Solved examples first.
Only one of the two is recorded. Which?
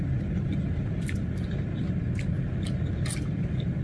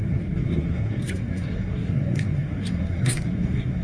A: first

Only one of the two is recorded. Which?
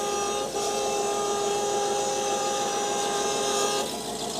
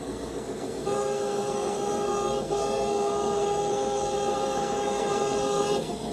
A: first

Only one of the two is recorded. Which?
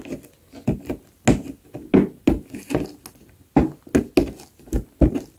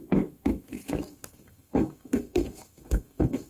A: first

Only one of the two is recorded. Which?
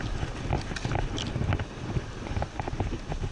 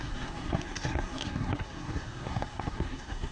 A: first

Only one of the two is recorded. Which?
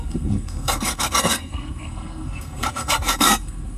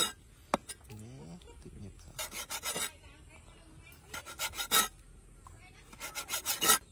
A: second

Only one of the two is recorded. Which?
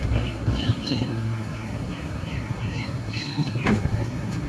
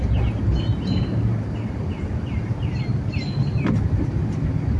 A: second